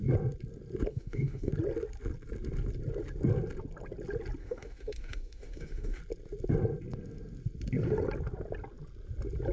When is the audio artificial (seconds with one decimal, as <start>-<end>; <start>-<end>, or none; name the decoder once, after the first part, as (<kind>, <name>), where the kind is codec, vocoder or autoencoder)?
0.9-1.5 (autoencoder, DAC-VAE); 4.4-6.0